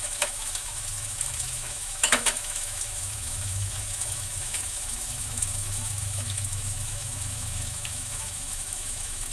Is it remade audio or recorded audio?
remade